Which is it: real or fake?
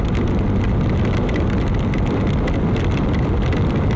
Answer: real